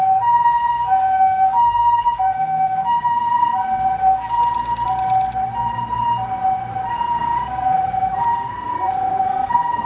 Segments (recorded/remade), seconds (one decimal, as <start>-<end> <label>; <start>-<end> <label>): 0.0-3.5 remade; 3.5-4.0 recorded; 4.0-4.4 remade; 4.4-6.9 recorded; 6.9-9.8 remade